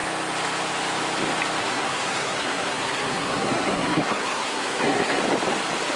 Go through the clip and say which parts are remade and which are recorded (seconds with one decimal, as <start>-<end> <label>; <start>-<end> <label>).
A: 0.0-1.6 recorded; 1.6-5.2 remade; 5.2-6.0 recorded